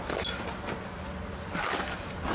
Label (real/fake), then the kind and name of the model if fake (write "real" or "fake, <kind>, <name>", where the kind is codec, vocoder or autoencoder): real